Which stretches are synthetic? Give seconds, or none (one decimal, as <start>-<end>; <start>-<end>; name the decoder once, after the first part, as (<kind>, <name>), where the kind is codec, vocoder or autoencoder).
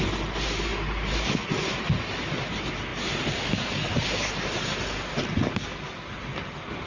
none